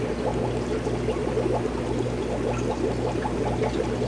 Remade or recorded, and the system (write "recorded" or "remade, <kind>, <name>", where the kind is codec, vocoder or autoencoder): recorded